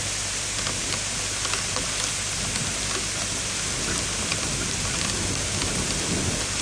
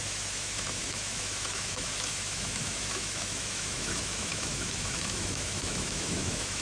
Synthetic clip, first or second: second